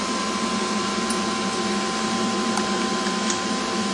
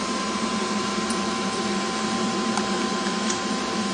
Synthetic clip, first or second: second